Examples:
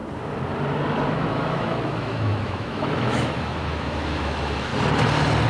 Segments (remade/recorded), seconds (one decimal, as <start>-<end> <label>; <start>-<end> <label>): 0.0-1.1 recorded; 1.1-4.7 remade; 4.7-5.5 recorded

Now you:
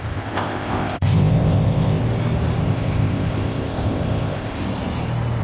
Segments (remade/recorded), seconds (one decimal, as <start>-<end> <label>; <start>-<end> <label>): 0.0-2.0 remade; 2.0-2.6 recorded; 2.6-4.6 remade; 4.6-5.4 recorded

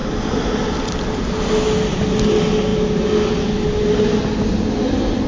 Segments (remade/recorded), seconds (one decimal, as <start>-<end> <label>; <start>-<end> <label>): 0.0-5.3 recorded

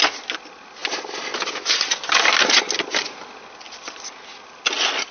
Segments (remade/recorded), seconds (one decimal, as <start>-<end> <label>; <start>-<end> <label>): 0.0-5.1 recorded